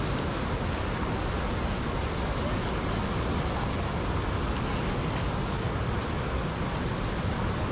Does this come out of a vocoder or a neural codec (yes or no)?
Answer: no